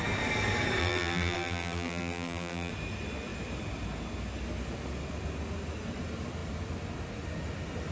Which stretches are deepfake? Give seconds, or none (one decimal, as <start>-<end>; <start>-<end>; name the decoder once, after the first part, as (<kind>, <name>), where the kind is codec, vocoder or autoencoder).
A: 0.8-2.7 (vocoder, BigVGAN v2)